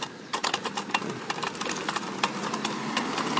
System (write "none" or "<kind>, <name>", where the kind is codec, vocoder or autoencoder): none